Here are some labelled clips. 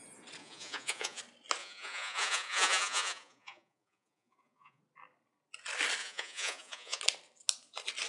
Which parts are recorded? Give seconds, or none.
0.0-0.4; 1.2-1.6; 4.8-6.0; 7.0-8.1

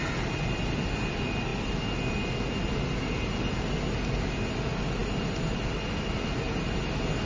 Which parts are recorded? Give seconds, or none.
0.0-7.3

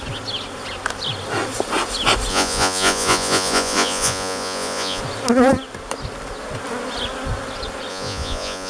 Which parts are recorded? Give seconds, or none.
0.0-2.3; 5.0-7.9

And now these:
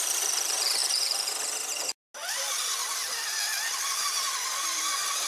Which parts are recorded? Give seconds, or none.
0.0-5.3

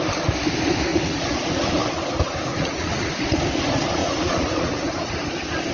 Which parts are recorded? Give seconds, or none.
0.0-0.9; 1.8-2.5; 3.4-4.0; 5.3-5.7

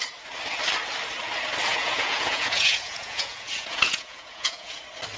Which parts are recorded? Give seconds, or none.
0.0-1.7; 4.8-5.2